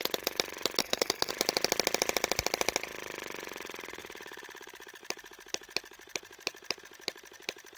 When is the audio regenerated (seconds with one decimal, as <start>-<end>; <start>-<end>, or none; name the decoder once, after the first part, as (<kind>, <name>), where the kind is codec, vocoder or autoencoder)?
0.8-1.3 (codec, SNAC)

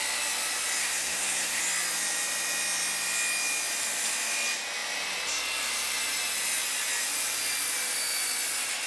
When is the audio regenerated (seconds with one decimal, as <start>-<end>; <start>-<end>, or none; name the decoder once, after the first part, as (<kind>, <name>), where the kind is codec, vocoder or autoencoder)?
0.8-1.6 (codec, SNAC)

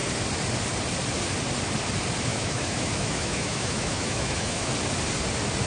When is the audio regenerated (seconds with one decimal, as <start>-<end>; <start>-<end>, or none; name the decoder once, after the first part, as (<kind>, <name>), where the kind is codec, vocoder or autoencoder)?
2.3-4.7 (autoencoder, DAC-VAE)

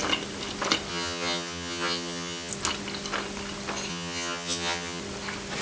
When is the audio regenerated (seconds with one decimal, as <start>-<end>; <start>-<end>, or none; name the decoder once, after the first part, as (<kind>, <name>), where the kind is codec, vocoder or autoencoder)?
0.9-2.5 (vocoder, HiFi-GAN); 3.9-5.0

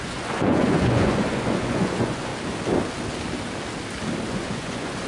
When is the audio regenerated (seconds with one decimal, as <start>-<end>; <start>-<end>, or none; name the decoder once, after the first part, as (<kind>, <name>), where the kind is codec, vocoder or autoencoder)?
0.0-2.3 (vocoder, Vocos); 4.3-5.1

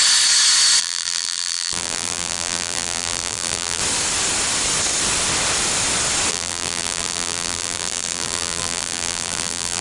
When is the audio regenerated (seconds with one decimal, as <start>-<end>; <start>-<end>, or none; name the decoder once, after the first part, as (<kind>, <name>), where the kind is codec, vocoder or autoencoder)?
0.8-3.8 (vocoder, BigVGAN v2); 6.3-9.8

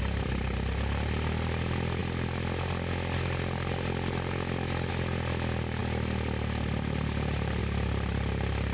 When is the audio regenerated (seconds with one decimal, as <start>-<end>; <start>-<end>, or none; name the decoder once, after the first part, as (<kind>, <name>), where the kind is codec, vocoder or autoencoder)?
none

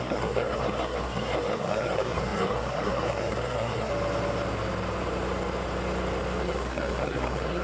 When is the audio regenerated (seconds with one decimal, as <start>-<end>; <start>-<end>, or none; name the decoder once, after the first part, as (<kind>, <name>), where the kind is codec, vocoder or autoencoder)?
0.0-3.9 (codec, SNAC); 6.4-7.6